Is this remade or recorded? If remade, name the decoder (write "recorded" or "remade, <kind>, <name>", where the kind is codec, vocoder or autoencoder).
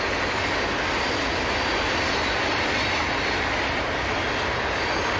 recorded